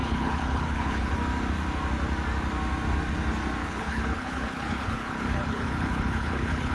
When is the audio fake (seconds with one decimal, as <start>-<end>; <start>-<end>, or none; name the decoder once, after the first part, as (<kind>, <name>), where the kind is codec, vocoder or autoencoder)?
0.0-1.1 (codec, HILCodec); 3.6-6.7